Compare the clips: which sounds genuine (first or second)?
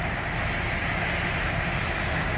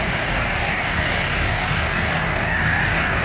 first